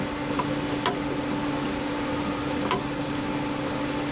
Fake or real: real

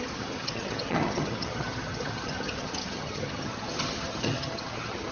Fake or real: fake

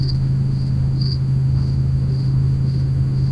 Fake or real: fake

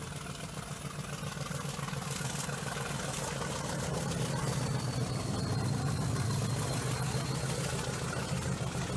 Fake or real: real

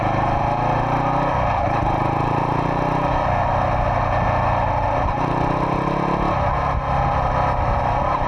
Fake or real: real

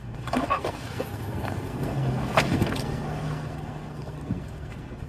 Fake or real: fake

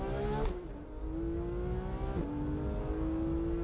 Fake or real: real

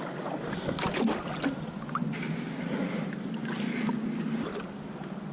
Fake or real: real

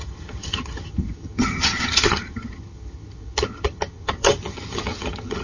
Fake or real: fake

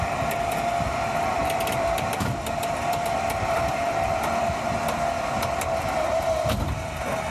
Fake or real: fake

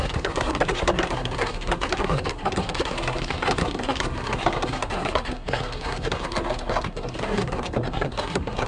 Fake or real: fake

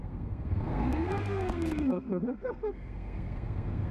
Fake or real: fake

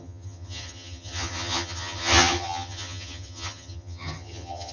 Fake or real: fake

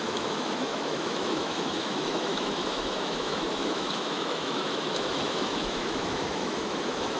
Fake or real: fake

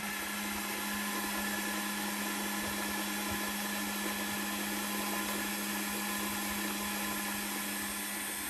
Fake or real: real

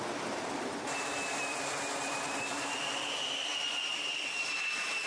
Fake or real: fake